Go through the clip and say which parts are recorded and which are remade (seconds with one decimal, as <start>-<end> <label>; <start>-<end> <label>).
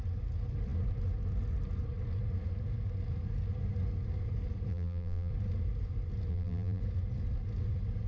0.0-4.7 recorded; 4.7-5.3 remade; 5.3-6.3 recorded; 6.3-6.8 remade; 6.8-8.1 recorded